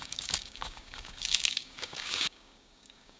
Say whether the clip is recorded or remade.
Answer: remade